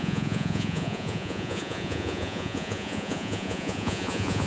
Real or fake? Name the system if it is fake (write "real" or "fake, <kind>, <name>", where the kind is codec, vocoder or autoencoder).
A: fake, vocoder, Vocos